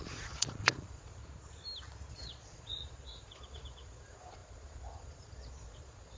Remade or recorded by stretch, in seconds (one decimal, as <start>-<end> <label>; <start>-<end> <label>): 0.0-1.2 remade; 1.2-2.1 recorded; 2.1-6.2 remade